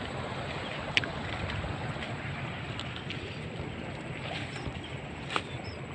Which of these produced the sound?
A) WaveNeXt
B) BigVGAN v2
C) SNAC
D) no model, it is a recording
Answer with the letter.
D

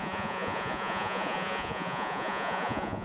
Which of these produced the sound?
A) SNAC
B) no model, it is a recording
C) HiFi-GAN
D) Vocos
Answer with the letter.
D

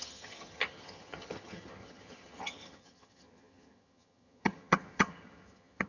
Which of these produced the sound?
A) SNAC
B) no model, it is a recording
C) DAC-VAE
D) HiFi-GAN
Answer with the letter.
D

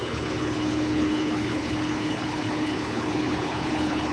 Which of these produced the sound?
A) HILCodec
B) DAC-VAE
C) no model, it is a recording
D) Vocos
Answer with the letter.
A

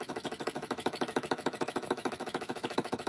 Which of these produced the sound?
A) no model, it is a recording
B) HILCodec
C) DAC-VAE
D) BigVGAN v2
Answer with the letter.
C